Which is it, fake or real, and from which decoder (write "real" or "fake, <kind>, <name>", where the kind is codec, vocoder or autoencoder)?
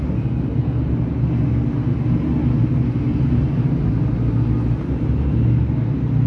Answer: real